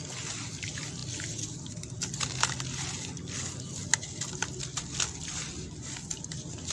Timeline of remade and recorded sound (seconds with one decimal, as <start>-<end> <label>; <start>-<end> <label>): 0.0-6.7 recorded